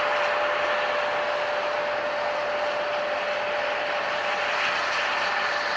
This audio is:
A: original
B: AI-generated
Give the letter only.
A